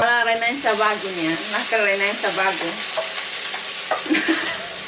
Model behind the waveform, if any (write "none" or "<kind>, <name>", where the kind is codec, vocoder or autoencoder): none